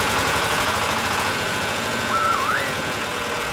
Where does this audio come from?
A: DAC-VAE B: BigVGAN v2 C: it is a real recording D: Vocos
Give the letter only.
D